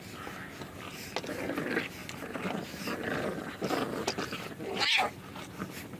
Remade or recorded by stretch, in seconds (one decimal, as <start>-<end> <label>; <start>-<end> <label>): 0.0-6.0 recorded